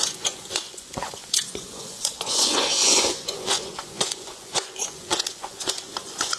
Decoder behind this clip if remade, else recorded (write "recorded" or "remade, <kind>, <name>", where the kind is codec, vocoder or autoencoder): remade, vocoder, Vocos